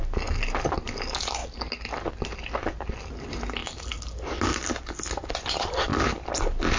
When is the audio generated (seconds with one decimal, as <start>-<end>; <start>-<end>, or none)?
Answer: none

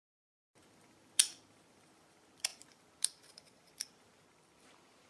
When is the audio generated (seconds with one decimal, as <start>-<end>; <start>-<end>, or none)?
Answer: 0.0-5.1

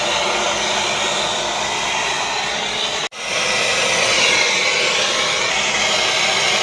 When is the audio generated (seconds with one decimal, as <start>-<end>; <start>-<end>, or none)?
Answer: none

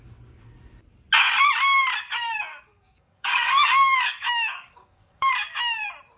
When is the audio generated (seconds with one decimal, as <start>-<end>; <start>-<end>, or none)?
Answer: 2.5-5.3

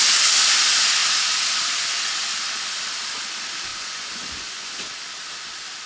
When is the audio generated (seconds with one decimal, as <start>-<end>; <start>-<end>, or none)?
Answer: 3.7-4.7